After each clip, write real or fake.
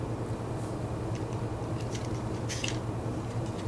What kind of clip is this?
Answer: real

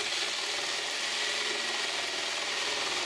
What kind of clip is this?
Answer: real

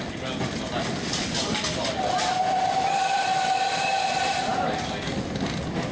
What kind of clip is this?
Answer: real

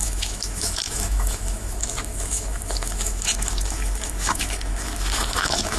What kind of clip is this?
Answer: fake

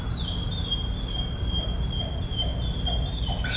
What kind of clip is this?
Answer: real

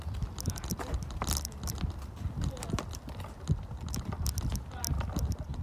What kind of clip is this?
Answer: real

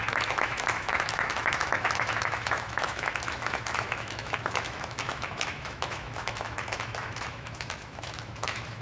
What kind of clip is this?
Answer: fake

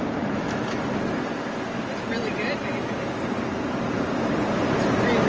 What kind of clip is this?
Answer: real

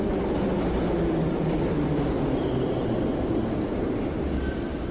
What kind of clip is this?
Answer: real